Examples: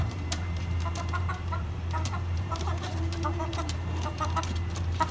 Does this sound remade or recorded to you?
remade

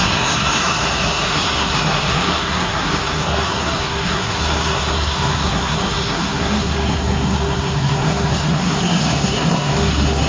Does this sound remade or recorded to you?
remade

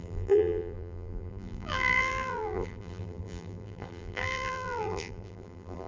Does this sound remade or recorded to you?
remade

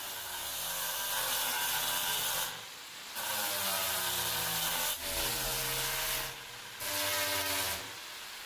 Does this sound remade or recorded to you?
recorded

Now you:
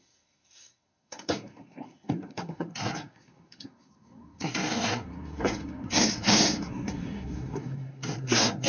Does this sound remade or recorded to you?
remade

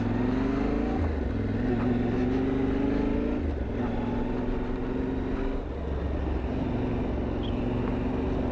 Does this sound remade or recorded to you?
recorded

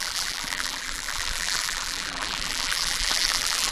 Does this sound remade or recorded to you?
remade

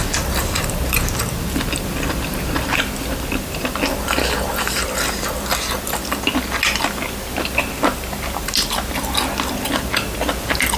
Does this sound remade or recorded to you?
recorded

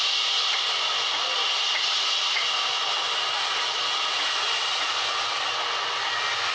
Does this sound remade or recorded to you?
recorded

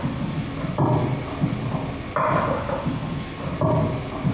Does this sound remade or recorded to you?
recorded